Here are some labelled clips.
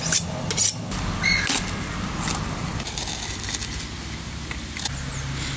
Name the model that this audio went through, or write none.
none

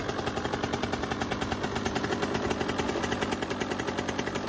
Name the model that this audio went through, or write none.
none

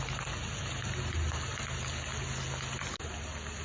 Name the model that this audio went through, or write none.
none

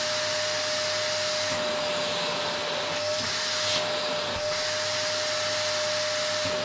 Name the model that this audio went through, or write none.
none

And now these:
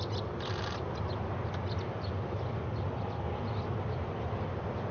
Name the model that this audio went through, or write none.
none